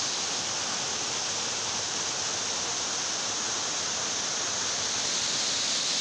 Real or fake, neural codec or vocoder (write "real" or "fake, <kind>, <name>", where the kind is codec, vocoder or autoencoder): real